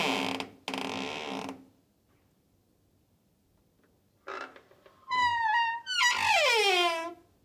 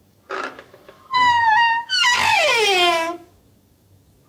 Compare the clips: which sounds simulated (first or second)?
second